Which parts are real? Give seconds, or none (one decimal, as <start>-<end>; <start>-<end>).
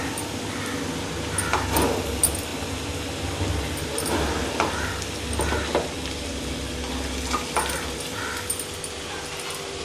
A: 0.0-9.8